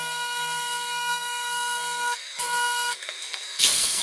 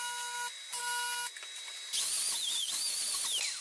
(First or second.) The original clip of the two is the second